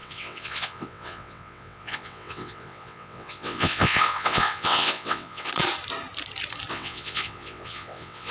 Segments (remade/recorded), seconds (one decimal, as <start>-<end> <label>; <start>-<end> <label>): 0.0-5.5 remade; 5.5-6.7 recorded; 6.7-8.3 remade